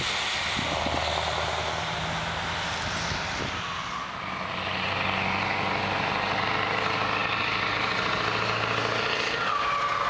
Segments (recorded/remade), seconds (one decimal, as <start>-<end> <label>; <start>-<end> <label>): 0.0-10.1 recorded